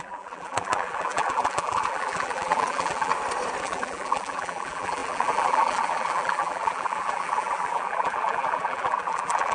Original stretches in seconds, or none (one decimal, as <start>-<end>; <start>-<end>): 3.1-3.6